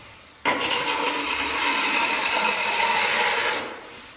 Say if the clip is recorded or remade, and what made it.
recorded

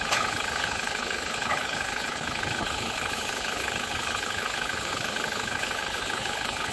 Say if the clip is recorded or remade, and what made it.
remade, codec, HILCodec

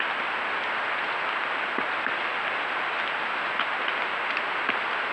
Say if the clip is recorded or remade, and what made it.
recorded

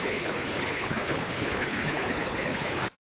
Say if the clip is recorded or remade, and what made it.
remade, codec, HILCodec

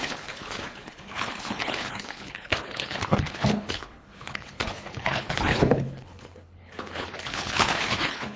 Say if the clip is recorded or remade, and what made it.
remade, codec, HILCodec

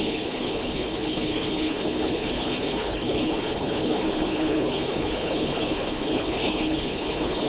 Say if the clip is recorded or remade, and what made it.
remade, codec, HILCodec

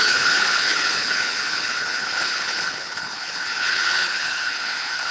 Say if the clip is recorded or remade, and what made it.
remade, codec, HILCodec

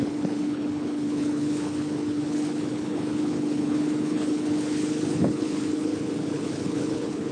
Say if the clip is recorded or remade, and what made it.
remade, codec, HILCodec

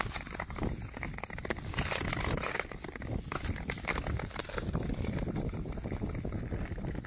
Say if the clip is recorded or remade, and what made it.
recorded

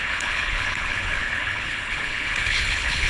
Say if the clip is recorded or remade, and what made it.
remade, codec, HILCodec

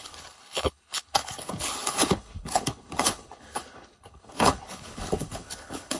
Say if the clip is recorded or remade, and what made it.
remade, codec, HILCodec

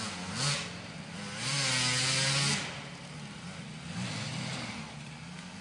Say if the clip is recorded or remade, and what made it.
recorded